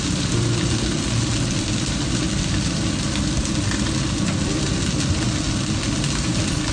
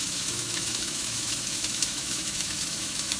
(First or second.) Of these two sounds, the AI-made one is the second